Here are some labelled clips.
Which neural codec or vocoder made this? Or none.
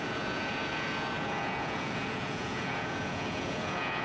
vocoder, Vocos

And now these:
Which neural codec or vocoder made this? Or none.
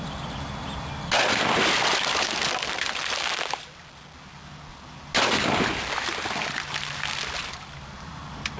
none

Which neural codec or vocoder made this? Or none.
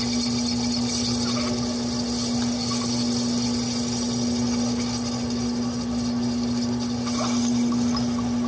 none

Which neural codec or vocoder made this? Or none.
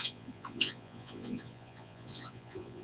vocoder, Vocos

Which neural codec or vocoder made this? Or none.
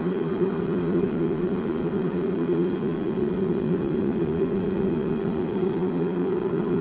vocoder, Vocos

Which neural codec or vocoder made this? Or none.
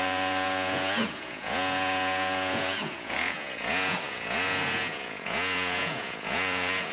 vocoder, Vocos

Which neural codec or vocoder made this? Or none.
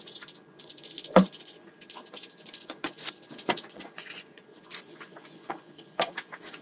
vocoder, Vocos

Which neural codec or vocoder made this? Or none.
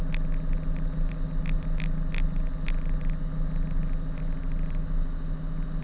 none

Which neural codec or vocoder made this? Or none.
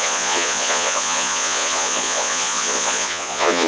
vocoder, Vocos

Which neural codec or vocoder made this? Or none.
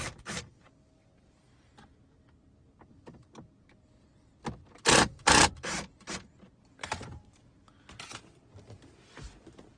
none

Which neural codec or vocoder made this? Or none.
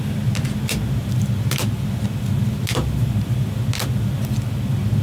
none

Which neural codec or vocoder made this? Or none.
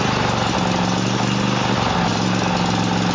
none